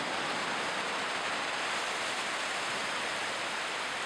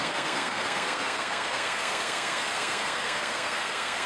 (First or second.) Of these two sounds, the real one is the first